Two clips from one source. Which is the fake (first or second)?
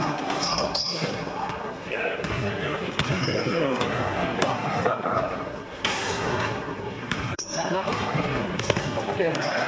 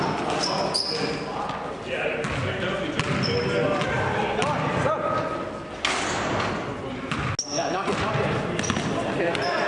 first